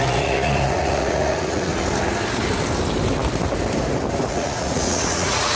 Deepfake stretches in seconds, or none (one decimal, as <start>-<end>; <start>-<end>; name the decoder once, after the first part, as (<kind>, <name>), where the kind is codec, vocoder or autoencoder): 0.0-1.7 (vocoder, Vocos); 4.3-5.6